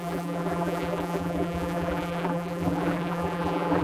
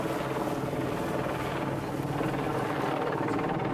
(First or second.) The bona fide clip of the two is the second